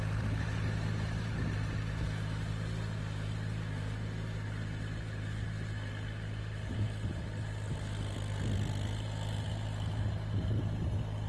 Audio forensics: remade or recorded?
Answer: recorded